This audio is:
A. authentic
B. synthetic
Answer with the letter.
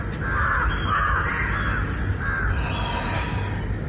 A